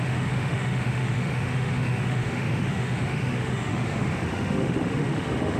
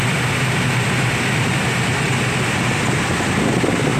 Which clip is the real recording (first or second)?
second